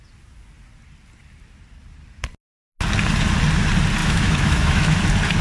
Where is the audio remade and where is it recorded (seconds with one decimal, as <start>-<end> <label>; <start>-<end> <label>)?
0.0-4.0 recorded; 4.0-5.0 remade; 5.0-5.4 recorded